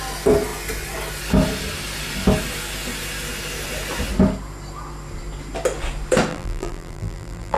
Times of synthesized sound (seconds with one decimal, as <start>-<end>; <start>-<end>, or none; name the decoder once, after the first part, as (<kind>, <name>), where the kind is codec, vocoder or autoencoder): 6.3-7.6 (vocoder, BigVGAN v2)